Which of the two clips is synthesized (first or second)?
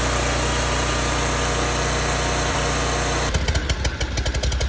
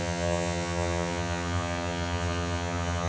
second